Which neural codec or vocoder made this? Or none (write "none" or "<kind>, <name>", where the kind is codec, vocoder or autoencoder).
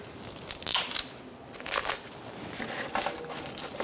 none